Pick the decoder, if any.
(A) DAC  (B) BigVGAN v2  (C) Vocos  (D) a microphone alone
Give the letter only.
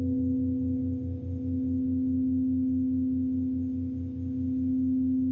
D